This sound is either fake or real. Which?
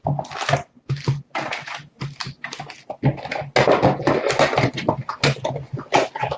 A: real